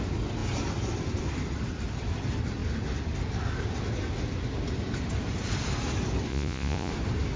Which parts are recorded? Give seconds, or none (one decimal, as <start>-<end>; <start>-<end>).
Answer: 0.0-6.3; 6.9-7.4